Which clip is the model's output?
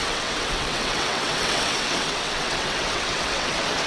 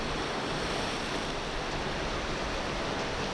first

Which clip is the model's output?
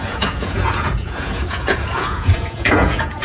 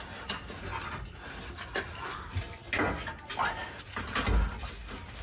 first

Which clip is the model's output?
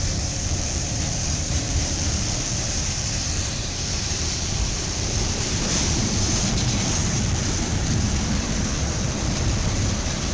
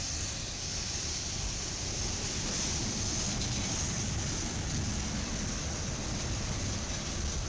first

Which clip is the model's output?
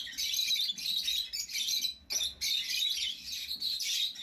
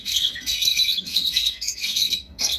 second